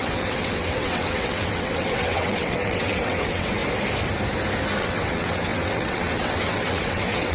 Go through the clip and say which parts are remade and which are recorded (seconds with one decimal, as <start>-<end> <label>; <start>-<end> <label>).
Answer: 0.0-3.6 remade; 3.6-4.8 recorded; 4.8-7.3 remade

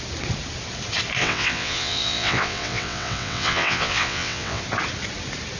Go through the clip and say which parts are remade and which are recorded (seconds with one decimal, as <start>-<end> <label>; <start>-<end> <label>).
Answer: 0.0-1.2 recorded; 1.2-4.6 remade; 4.6-5.6 recorded

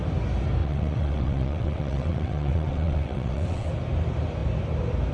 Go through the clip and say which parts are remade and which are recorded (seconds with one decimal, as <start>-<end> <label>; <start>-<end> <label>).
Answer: 0.0-0.6 recorded; 0.6-3.7 remade; 3.7-5.1 recorded

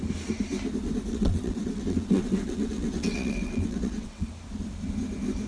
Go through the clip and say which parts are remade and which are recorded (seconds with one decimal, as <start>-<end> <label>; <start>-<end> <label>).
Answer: 0.0-1.1 recorded; 1.1-4.3 remade; 4.3-5.5 recorded

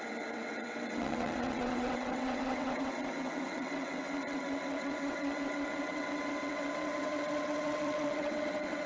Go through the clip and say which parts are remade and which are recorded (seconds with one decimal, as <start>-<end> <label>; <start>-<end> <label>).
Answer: 0.0-8.9 remade

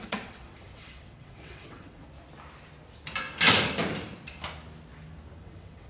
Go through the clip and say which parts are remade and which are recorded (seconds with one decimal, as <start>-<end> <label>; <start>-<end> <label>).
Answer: 0.0-2.0 remade; 2.0-5.4 recorded; 5.4-5.9 remade

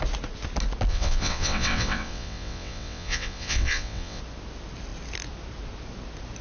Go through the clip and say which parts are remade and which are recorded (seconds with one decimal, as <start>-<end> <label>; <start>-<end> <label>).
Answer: 0.0-0.9 recorded; 0.9-4.2 remade; 4.2-6.4 recorded

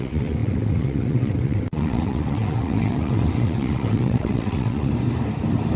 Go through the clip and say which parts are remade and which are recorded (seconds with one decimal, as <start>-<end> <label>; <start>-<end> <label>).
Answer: 0.0-4.9 remade; 4.9-5.8 recorded